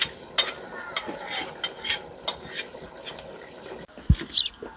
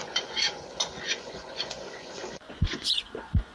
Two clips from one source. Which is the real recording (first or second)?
first